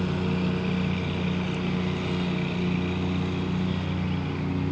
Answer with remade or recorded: recorded